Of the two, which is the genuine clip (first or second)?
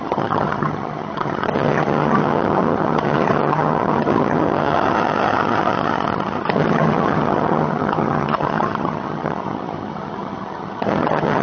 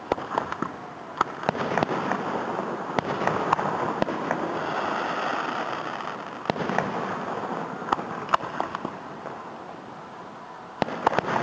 second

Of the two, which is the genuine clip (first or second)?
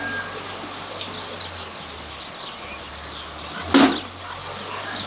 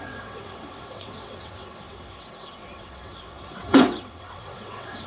first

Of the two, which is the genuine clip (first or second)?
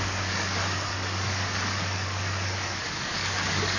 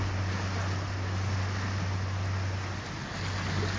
second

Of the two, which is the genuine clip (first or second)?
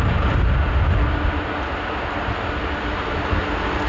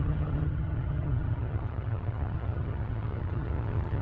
first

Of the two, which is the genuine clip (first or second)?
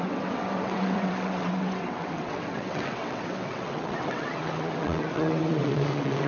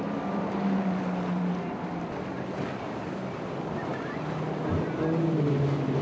second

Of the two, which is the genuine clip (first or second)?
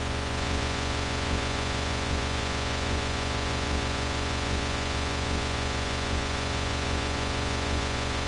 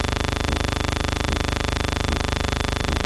second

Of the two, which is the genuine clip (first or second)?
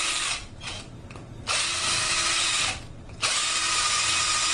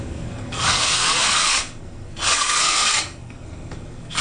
first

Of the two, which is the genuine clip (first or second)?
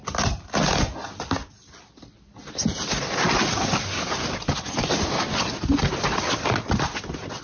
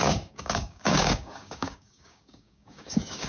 first